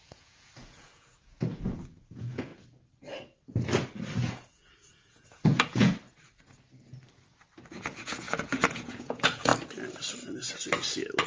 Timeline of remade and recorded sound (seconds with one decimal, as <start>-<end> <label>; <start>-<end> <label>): 0.0-2.5 remade; 2.5-4.3 recorded; 4.3-5.9 remade; 5.9-7.7 recorded; 7.7-9.5 remade; 9.5-11.3 recorded